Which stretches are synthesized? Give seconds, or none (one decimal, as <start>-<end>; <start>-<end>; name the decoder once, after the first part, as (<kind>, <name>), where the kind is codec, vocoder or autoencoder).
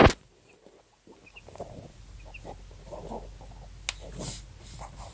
none